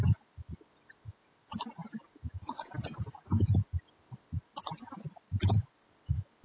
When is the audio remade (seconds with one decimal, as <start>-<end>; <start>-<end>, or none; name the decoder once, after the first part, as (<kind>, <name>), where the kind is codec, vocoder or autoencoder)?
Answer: none